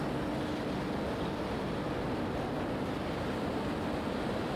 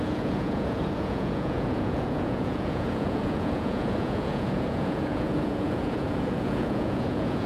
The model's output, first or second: second